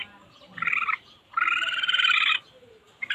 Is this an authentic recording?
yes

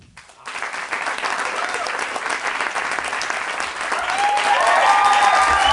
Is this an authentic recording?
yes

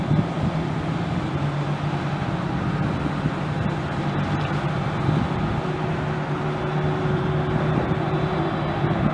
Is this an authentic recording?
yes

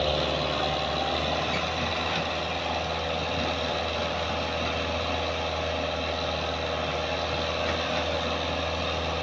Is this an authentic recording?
yes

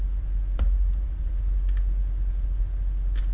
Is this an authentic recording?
yes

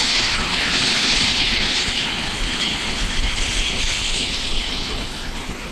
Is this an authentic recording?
no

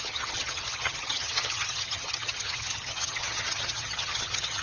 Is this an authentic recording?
no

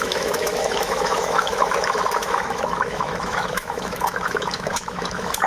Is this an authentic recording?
no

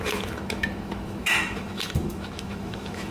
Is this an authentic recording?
no